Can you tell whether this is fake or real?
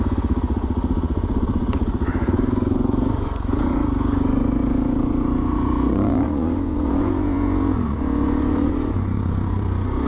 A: fake